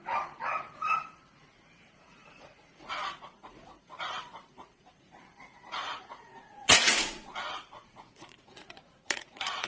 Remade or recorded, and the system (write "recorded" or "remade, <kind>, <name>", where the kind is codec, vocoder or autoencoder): remade, vocoder, Vocos